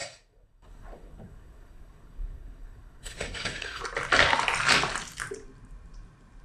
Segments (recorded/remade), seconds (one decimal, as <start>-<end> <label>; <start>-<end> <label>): 0.0-3.8 remade; 3.8-6.4 recorded

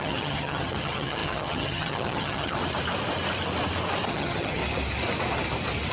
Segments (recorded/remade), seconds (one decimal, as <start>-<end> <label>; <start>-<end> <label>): 0.0-2.6 remade; 2.6-4.1 recorded; 4.1-4.6 remade; 4.6-5.9 recorded

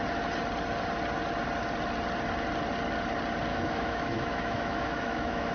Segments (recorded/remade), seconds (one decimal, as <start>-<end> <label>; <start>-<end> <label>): 0.0-3.5 recorded; 3.5-5.5 remade

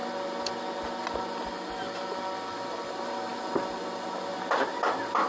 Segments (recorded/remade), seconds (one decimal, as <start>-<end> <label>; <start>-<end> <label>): 0.0-0.6 remade; 0.6-5.3 recorded

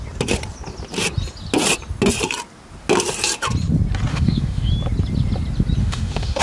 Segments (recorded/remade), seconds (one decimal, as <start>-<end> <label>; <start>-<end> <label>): 0.0-4.1 recorded; 4.1-4.7 remade; 4.7-5.8 recorded; 5.8-6.4 remade

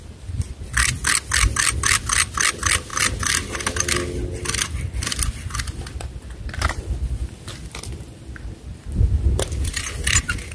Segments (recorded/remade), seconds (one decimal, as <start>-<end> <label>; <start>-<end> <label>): 0.0-10.5 recorded

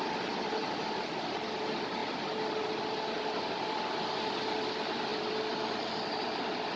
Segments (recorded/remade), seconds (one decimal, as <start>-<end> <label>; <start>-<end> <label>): 0.0-5.1 recorded; 5.1-6.8 remade

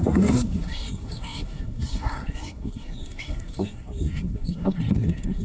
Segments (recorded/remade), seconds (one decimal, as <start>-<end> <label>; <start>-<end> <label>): 0.0-5.4 remade